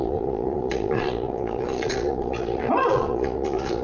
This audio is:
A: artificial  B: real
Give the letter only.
A